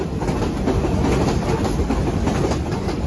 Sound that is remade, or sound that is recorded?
recorded